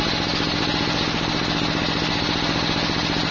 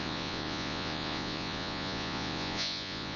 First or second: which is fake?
second